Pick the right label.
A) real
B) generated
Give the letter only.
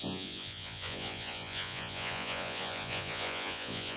B